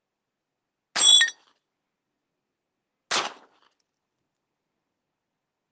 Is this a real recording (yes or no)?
yes